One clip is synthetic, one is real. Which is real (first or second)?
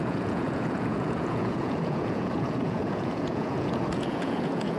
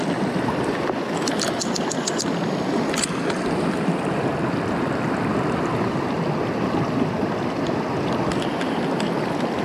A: second